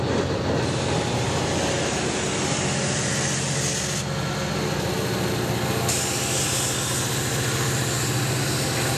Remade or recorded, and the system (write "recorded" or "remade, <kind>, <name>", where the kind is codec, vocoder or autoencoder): recorded